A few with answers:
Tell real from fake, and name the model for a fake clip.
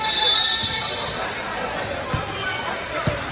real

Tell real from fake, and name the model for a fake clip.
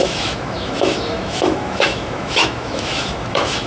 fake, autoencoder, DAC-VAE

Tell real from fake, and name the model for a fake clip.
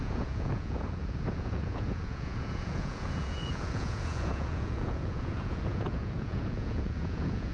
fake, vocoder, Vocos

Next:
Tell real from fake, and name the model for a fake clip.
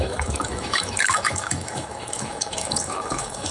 fake, autoencoder, DAC-VAE